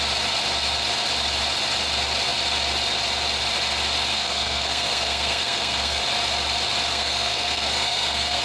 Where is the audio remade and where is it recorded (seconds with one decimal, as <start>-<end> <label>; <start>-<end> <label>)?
0.0-4.1 recorded; 4.1-6.0 remade; 6.0-6.9 recorded; 6.9-8.4 remade